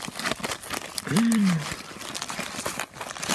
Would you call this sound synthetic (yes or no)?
yes